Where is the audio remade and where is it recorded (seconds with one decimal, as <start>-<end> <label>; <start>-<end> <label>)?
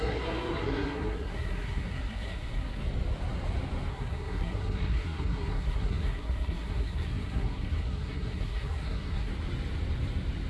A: 0.0-2.8 remade; 2.8-3.9 recorded; 3.9-9.3 remade; 9.3-10.5 recorded